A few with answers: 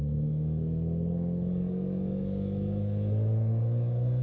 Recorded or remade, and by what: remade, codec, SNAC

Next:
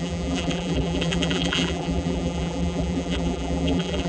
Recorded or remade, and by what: remade, vocoder, BigVGAN v2